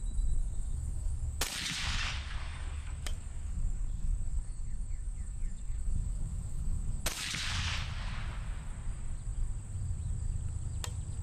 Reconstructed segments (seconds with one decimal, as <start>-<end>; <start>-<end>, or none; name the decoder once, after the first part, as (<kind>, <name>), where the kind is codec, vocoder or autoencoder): 0.4-1.4 (codec, DAC); 2.4-7.0